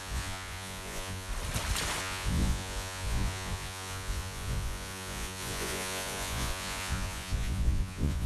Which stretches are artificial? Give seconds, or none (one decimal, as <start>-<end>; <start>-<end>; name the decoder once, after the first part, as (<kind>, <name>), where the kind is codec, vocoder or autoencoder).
0.0-1.3 (vocoder, Vocos); 2.0-8.3